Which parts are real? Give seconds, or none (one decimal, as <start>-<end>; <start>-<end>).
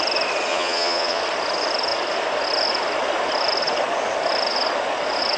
0.0-0.5; 1.2-5.4